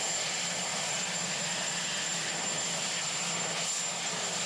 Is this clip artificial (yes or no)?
no